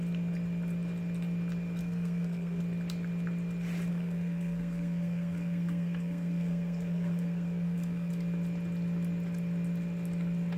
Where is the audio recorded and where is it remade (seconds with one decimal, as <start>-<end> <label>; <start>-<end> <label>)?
0.0-1.8 recorded; 1.8-2.6 remade; 2.6-3.9 recorded; 3.9-8.1 remade; 8.1-10.6 recorded